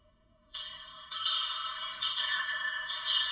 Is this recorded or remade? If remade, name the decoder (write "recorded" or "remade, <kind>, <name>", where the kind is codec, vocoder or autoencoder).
remade, codec, SNAC